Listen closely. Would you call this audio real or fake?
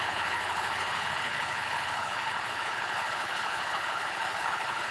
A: fake